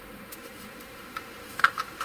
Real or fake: fake